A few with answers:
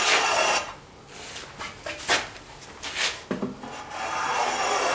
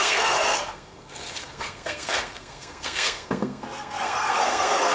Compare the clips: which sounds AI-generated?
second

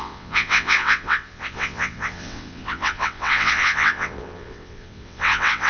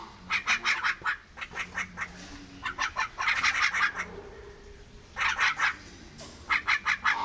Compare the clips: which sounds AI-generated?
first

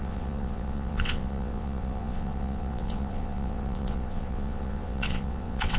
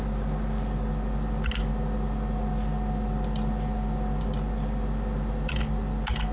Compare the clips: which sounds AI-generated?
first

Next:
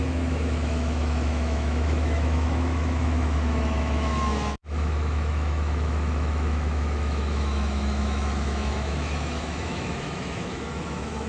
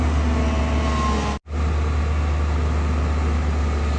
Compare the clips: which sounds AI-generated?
first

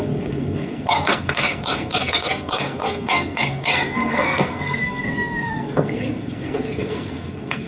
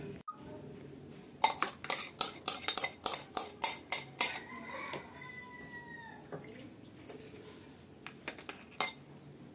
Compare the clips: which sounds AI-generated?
first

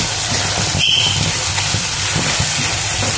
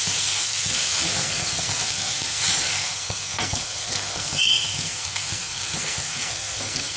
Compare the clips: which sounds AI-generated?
second